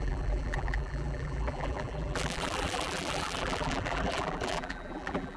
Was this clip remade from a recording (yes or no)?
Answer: yes